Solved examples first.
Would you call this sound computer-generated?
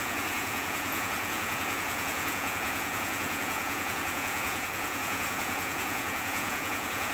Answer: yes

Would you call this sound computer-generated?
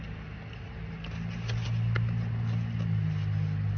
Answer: no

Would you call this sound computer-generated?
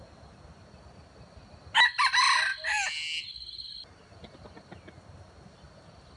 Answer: no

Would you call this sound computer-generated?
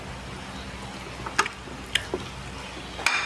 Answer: no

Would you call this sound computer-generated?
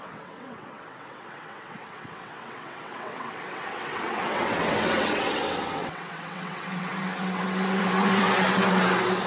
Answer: yes